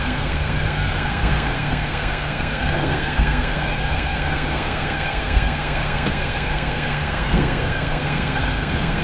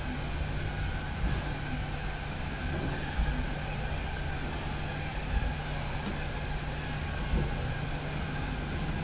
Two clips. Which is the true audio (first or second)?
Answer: second